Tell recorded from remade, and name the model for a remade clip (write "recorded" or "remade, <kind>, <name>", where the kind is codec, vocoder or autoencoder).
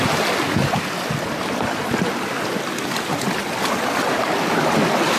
recorded